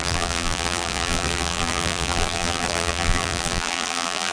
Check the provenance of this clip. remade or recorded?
remade